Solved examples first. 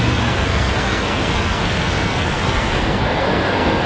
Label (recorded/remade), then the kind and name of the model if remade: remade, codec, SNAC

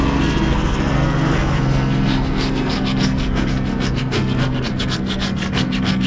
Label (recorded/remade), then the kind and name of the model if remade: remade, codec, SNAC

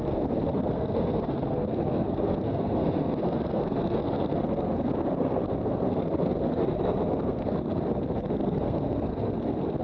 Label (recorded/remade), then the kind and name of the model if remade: remade, codec, SNAC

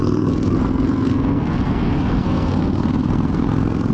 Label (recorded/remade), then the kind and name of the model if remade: remade, codec, SNAC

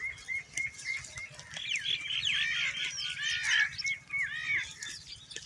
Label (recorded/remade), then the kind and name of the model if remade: recorded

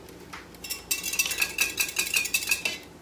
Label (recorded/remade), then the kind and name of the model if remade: recorded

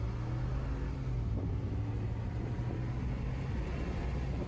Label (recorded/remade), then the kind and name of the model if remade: recorded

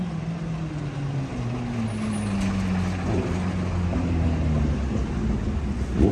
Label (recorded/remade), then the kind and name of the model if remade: recorded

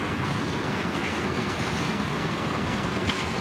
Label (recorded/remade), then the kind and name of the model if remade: remade, codec, SNAC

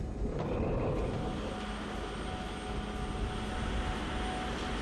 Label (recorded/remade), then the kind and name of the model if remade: recorded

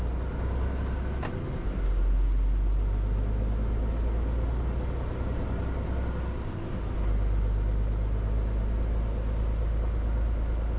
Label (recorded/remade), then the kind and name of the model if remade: recorded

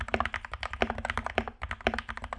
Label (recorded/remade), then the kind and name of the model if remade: recorded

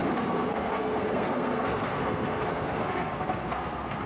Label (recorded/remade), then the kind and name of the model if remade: remade, codec, SNAC